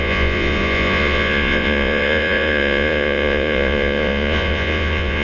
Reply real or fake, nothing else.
fake